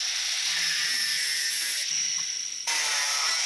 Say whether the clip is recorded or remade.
recorded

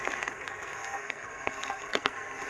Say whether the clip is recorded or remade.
remade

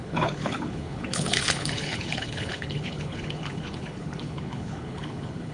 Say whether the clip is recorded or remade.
remade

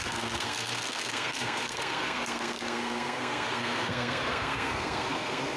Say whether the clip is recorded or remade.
remade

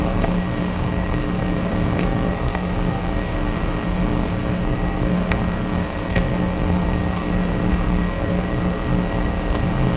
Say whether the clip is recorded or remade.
remade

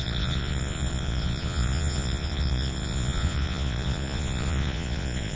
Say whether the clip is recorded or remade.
remade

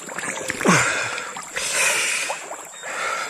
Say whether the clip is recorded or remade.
recorded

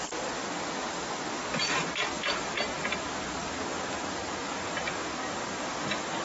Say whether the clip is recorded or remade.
recorded